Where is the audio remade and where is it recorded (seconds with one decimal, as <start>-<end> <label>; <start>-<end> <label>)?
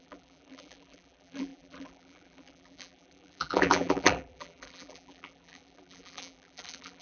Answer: 0.0-7.0 remade